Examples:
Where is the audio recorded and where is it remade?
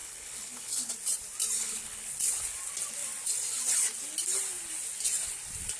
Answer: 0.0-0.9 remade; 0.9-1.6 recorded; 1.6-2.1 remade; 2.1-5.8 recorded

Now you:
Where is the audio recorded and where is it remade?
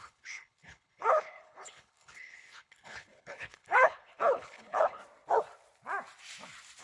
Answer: 0.0-5.0 remade; 5.0-6.8 recorded